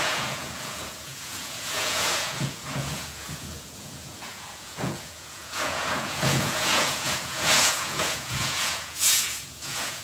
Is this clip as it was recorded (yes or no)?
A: no